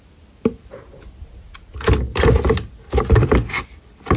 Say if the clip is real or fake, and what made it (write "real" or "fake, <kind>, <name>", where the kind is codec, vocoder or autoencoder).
real